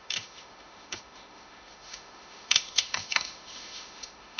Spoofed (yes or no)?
yes